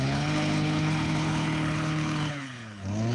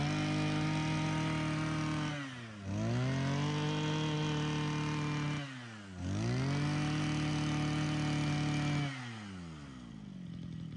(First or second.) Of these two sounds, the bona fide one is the second